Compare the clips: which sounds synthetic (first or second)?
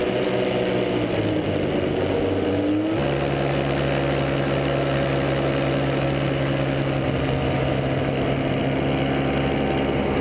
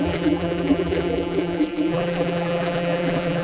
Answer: second